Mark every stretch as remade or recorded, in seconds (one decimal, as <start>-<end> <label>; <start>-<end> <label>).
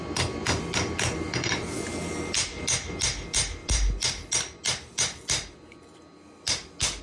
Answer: 0.0-7.0 recorded